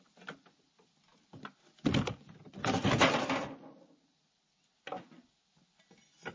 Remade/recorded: recorded